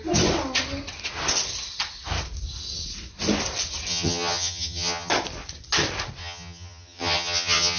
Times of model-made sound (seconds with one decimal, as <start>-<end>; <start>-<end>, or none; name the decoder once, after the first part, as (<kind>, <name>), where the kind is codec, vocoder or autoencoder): 3.9-5.1 (vocoder, HiFi-GAN); 6.2-7.8